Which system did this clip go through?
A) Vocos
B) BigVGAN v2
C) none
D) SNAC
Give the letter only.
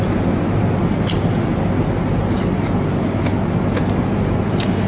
C